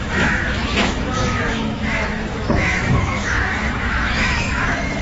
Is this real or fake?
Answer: fake